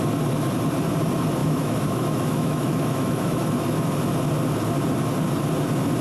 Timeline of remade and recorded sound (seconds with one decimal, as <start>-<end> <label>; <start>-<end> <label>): 0.0-1.4 recorded; 1.4-4.0 remade; 4.0-6.0 recorded